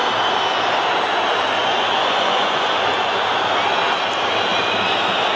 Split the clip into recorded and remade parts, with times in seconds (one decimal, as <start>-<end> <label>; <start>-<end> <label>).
0.0-1.6 recorded; 1.6-3.3 remade; 3.3-5.4 recorded